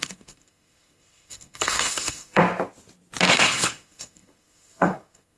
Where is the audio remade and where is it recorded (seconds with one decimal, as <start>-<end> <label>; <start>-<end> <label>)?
0.0-2.4 remade; 2.4-3.3 recorded; 3.3-5.4 remade